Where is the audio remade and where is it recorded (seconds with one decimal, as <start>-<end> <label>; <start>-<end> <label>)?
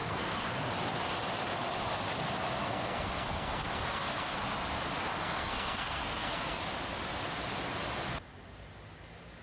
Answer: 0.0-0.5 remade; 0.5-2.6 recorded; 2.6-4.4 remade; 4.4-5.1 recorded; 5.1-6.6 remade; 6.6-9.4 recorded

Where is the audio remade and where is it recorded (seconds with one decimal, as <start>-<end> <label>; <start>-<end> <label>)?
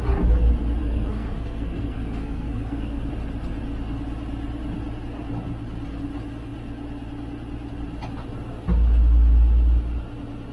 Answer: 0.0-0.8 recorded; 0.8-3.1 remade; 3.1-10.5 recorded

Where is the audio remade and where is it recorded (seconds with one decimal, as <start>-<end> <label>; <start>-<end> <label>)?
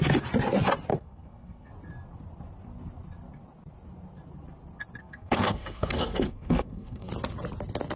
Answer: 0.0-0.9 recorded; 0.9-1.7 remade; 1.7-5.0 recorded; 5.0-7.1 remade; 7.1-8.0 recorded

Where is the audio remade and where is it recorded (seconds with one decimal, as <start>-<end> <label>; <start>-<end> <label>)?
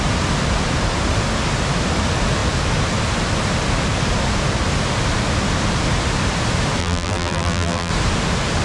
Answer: 0.0-6.8 recorded; 6.8-7.9 remade; 7.9-8.6 recorded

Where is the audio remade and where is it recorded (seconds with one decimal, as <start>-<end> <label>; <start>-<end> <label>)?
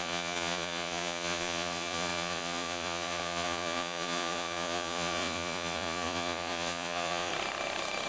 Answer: 0.0-7.3 remade; 7.3-8.1 recorded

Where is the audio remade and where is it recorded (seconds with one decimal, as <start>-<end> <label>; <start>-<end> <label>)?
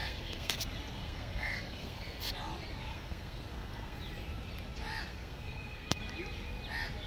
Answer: 0.0-0.6 remade; 0.6-1.0 recorded; 1.0-2.3 remade; 2.3-2.9 recorded; 2.9-4.0 remade; 4.0-5.1 recorded; 5.1-6.0 remade; 6.0-7.1 recorded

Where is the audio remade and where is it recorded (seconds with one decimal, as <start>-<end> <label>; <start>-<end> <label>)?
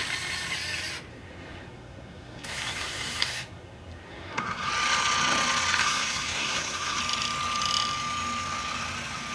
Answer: 0.0-1.1 recorded; 1.1-4.7 remade; 4.7-5.8 recorded; 5.8-7.0 remade; 7.0-9.3 recorded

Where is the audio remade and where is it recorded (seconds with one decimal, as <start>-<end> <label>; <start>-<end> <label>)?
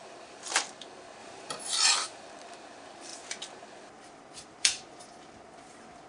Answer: 0.0-0.6 remade; 0.6-1.2 recorded; 1.2-1.7 remade; 1.7-6.1 recorded